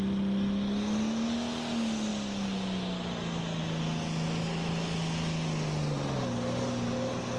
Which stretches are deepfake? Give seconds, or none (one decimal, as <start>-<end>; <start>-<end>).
none